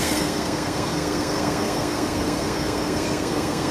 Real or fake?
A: fake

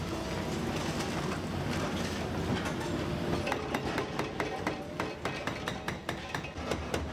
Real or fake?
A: real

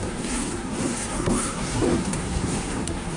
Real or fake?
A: fake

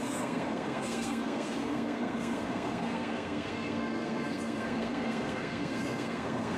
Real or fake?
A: fake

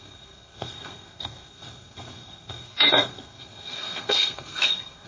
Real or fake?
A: fake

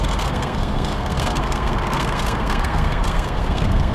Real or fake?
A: fake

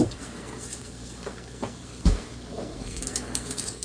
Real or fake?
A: fake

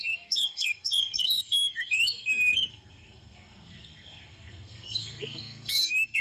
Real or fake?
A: fake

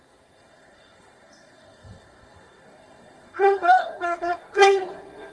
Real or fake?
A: fake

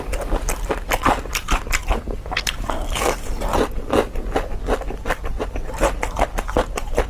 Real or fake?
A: real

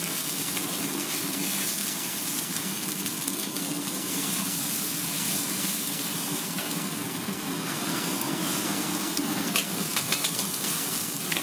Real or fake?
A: fake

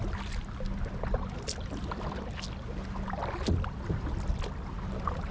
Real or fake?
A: real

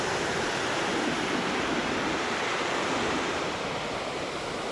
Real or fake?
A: real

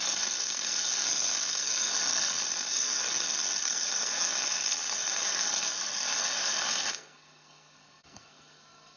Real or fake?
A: fake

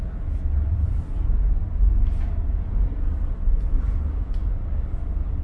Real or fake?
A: real